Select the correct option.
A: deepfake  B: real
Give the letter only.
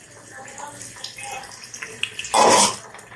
B